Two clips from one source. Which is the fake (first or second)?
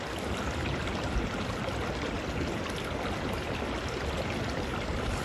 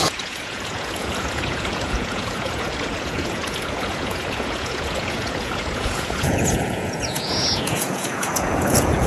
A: second